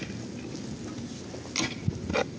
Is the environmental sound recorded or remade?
recorded